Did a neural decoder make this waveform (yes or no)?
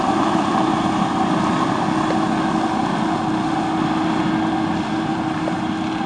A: no